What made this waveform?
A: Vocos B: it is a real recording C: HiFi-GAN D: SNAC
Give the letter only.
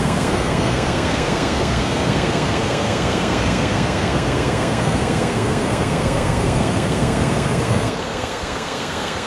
D